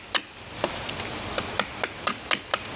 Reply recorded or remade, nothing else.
recorded